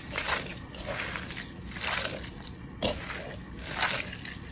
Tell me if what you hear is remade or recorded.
recorded